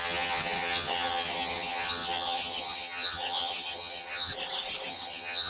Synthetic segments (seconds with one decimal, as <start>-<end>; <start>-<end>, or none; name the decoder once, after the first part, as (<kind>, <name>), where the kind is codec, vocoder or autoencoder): 0.0-4.3 (vocoder, HiFi-GAN); 4.9-5.5